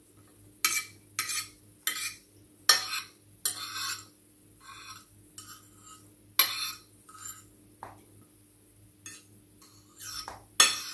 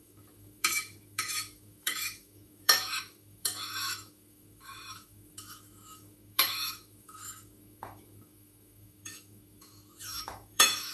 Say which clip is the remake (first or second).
second